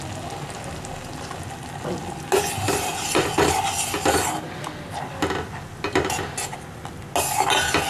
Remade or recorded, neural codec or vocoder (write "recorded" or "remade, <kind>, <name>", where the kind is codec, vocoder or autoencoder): recorded